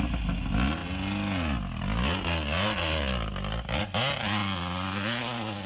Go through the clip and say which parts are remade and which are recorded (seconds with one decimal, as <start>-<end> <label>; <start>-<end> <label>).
0.0-5.7 recorded